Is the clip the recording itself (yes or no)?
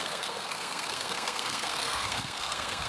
no